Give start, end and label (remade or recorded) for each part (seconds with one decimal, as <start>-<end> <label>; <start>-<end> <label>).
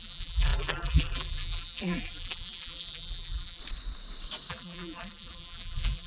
0.0-3.6 remade; 3.6-4.5 recorded; 4.5-6.1 remade